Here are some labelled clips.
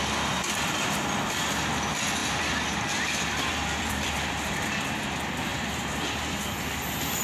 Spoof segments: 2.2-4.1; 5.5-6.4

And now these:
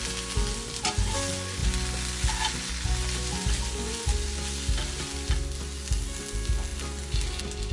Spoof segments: none

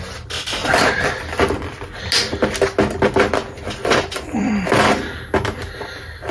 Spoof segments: 0.6-1.7